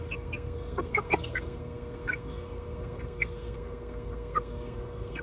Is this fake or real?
fake